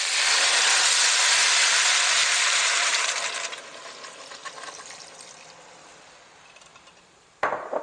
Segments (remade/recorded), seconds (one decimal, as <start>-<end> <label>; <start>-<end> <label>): 0.0-2.2 recorded; 2.2-3.4 remade; 3.4-6.7 recorded; 6.7-7.8 remade